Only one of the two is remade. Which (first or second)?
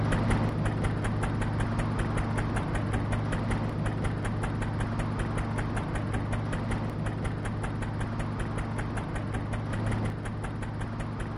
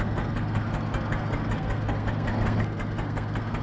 second